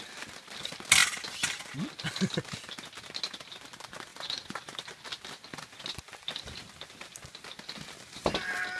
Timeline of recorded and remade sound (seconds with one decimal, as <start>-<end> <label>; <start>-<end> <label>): 0.0-4.1 recorded; 4.1-4.8 remade; 4.8-8.8 recorded